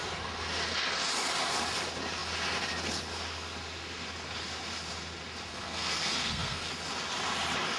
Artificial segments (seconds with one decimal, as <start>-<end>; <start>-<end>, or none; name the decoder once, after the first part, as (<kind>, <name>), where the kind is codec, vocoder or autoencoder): 5.5-6.7 (codec, SNAC)